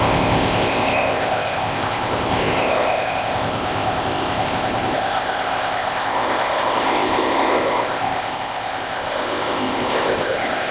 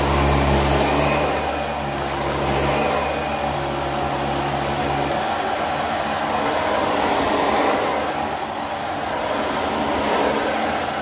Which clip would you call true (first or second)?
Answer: second